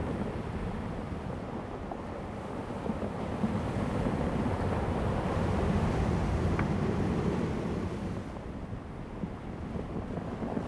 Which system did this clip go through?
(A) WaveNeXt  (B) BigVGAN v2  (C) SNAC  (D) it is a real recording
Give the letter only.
D